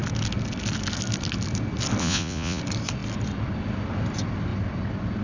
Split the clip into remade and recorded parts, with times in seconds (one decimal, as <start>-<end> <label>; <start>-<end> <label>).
0.0-2.0 recorded; 2.0-2.6 remade; 2.6-5.2 recorded